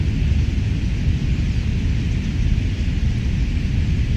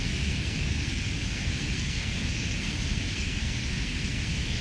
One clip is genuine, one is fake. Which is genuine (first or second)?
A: first